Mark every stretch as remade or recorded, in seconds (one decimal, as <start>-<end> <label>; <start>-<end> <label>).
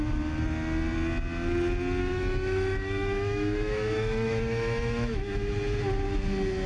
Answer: 0.0-2.0 recorded; 2.0-5.5 remade; 5.5-6.7 recorded